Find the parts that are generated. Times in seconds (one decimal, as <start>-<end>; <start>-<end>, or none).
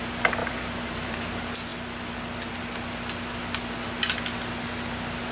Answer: 0.4-1.2